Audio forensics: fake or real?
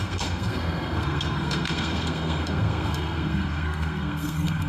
fake